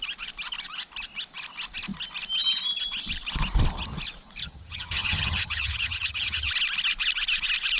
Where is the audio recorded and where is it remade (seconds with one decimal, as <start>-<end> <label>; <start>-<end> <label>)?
0.0-4.4 recorded; 4.4-6.5 remade; 6.5-7.8 recorded